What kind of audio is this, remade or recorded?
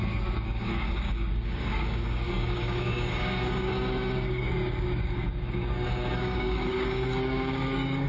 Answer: remade